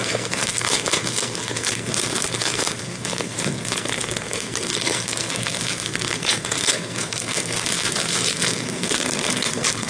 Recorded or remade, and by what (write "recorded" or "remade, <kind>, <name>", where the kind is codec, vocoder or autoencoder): remade, codec, SNAC